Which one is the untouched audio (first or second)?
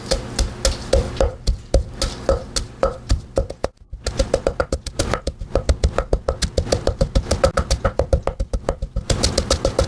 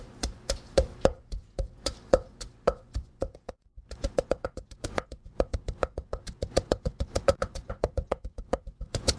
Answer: first